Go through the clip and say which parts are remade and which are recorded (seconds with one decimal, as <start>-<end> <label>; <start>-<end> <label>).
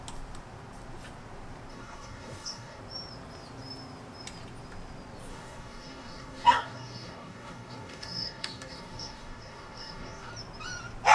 0.0-1.7 recorded; 1.7-2.8 remade; 2.8-5.3 recorded; 5.3-10.3 remade; 10.3-11.1 recorded